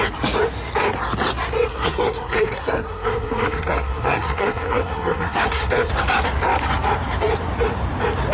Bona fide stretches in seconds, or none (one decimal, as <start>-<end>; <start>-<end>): 0.0-1.7; 5.9-8.3